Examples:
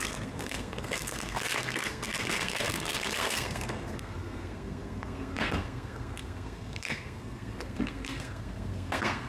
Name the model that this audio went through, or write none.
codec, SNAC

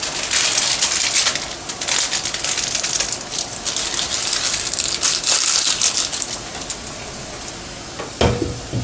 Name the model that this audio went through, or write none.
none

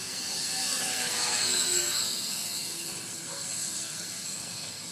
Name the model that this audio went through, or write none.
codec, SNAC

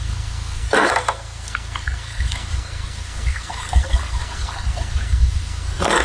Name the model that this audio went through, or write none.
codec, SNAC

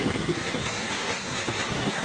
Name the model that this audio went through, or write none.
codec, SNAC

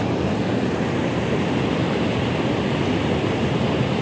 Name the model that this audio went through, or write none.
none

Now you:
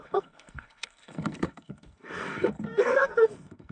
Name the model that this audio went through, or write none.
codec, SNAC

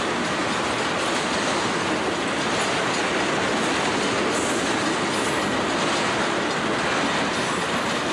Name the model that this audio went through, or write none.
none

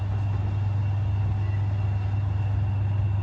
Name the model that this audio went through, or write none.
none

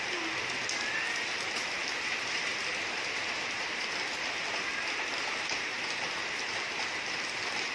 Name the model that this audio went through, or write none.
none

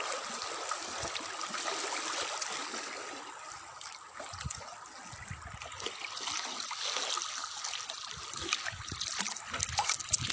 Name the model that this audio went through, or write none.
none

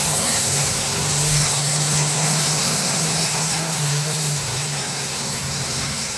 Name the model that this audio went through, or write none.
codec, SNAC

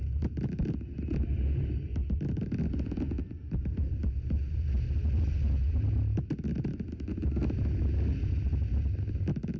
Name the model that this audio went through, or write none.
none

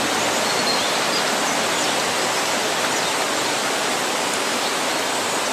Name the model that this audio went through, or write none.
none